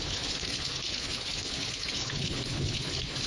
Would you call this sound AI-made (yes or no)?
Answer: yes